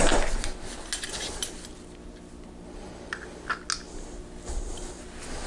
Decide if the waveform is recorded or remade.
recorded